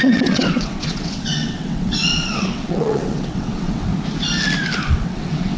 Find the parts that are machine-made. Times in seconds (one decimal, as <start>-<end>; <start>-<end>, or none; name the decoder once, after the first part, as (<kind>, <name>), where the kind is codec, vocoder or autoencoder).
0.0-3.9 (vocoder, WaveNeXt); 4.9-5.6